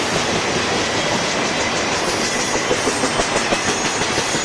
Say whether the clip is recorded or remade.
recorded